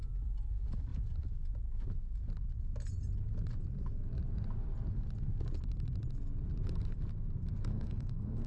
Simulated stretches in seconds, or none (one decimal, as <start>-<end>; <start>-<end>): 7.7-8.5